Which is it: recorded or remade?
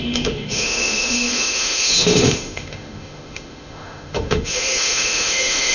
remade